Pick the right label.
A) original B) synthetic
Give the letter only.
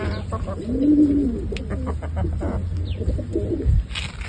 A